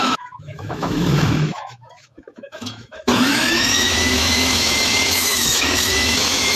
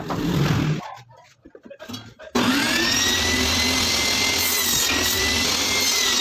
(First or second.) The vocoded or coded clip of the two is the first